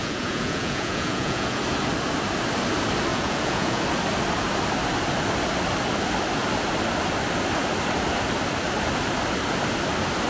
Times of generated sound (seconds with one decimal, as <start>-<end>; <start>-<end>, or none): 0.0-1.6; 3.1-3.8